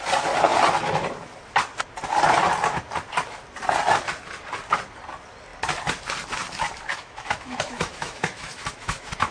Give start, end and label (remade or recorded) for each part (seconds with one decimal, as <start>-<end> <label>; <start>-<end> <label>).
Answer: 0.0-6.9 recorded; 6.9-9.3 remade